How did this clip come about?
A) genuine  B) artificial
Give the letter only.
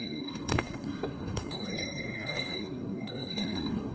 B